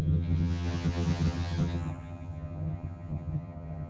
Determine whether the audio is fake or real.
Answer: fake